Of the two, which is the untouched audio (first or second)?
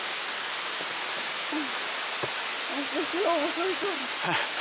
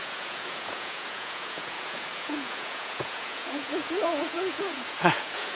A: first